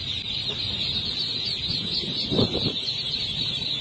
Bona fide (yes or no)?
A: yes